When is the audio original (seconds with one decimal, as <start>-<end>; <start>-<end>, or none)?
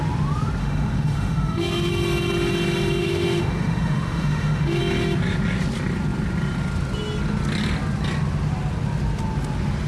0.0-0.6; 1.9-3.0; 4.8-9.9